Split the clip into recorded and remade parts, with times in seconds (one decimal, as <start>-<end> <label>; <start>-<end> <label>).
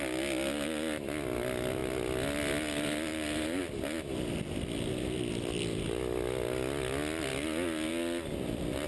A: 0.0-8.9 recorded